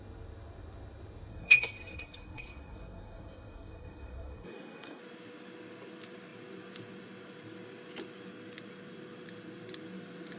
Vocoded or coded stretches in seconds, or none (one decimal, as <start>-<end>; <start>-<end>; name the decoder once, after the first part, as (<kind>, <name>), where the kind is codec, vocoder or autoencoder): 1.3-5.0 (codec, SNAC)